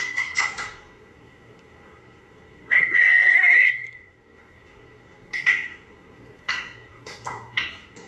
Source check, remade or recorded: remade